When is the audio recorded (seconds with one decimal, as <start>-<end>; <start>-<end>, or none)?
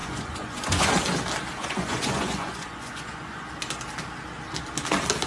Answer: 0.9-1.6; 3.5-5.3